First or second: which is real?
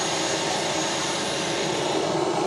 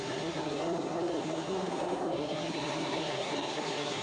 first